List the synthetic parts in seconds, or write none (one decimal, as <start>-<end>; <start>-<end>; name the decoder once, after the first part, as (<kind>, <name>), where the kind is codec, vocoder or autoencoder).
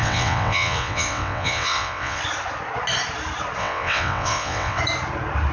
0.0-2.2 (vocoder, WaveNeXt); 3.6-4.8